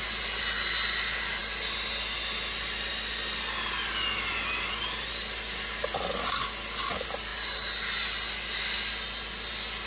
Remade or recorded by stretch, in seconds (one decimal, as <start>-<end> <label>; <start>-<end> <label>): 0.0-9.9 recorded